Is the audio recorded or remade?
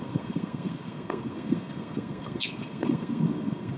remade